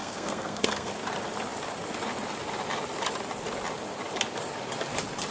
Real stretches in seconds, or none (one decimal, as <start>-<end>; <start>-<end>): 0.9-5.3